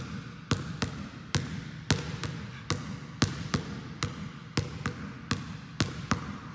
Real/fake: real